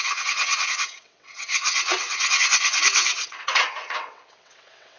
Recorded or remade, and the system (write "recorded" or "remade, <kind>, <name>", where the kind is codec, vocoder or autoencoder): remade, vocoder, WaveNeXt